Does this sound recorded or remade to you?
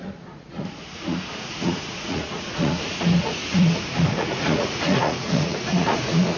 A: remade